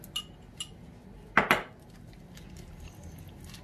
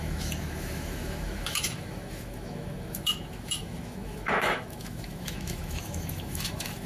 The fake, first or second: second